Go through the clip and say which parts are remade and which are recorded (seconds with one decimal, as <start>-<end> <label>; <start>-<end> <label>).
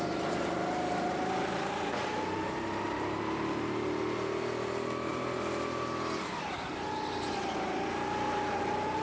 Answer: 0.0-9.0 recorded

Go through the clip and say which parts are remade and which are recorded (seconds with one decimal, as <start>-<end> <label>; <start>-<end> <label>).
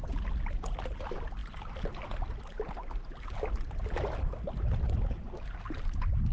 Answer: 0.0-1.4 recorded; 1.4-5.2 remade; 5.2-6.3 recorded